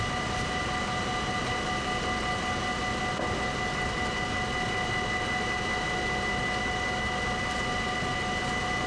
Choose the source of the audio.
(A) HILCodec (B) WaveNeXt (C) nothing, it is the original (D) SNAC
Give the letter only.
C